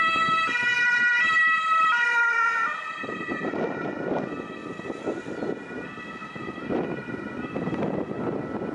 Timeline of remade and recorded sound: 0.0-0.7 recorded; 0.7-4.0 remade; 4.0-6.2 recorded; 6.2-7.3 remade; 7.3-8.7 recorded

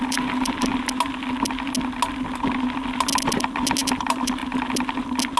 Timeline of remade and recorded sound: 0.0-0.7 remade; 0.7-3.9 recorded; 3.9-4.4 remade; 4.4-5.4 recorded